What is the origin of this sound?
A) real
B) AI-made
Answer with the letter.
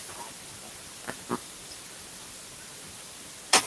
A